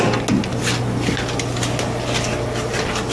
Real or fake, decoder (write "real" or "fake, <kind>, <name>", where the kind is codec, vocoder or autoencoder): real